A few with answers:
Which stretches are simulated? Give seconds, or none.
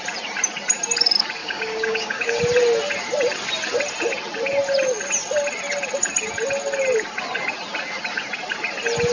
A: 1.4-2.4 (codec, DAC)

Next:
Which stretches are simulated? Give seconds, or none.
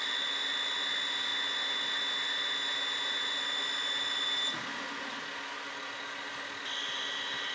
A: none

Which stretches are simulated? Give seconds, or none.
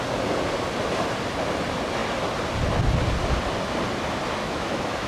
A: 4.4-5.1 (autoencoder, DAC-VAE)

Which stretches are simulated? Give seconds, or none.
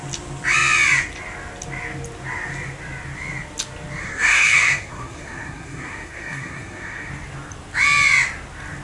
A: 4.0-7.1 (codec, SNAC)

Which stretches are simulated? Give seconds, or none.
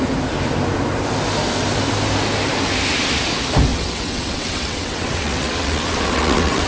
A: 3.7-6.7 (vocoder, WaveNeXt)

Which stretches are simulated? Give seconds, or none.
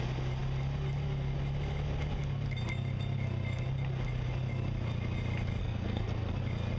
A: 5.6-6.3 (codec, SNAC)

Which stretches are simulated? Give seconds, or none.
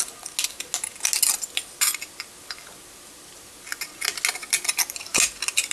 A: none